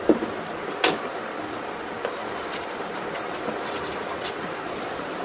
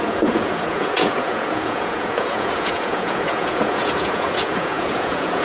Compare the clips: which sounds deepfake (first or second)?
second